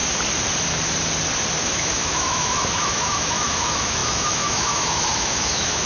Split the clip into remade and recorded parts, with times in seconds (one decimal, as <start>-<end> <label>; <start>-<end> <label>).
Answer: 0.0-1.6 recorded; 1.6-5.9 remade